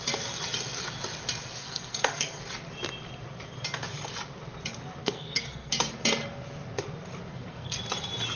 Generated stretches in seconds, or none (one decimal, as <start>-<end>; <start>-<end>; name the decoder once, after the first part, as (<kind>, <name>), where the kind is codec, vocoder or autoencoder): 1.6-2.4 (codec, SNAC); 5.0-5.7; 7.3-7.8